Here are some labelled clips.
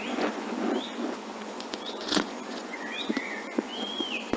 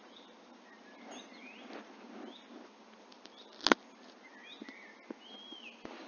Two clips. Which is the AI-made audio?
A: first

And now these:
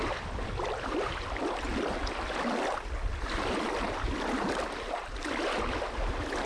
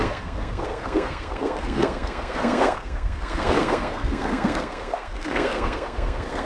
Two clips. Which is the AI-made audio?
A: second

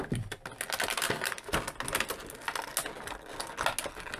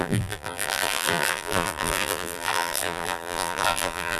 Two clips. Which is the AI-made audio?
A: second